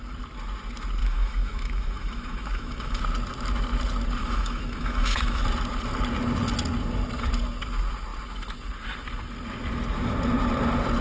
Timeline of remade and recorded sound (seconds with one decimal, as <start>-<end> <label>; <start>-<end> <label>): 0.0-1.0 recorded; 1.0-3.0 remade; 3.0-4.2 recorded; 4.2-5.4 remade; 5.4-11.0 recorded